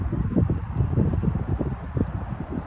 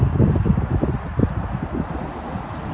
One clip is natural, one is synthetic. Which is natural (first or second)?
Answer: second